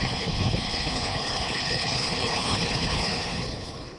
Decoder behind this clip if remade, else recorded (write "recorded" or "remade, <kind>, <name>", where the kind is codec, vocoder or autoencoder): remade, codec, HILCodec